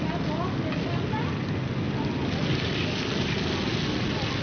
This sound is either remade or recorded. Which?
recorded